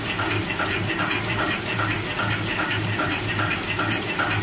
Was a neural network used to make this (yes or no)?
yes